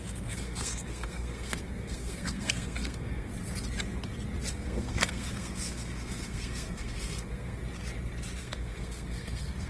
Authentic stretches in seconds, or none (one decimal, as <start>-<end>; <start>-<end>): 3.3-4.5; 7.6-8.4